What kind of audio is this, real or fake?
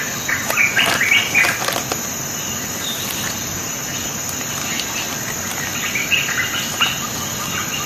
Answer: real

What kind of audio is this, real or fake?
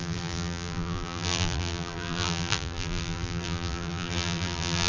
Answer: fake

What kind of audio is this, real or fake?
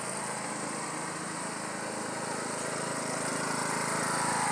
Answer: fake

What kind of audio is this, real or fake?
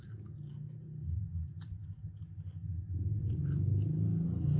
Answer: real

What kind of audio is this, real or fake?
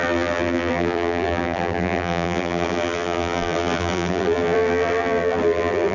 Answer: fake